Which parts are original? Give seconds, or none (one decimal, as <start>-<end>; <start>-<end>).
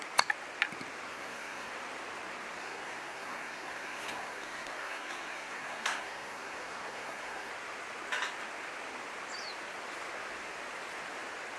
0.0-1.1; 1.7-2.6; 7.5-11.6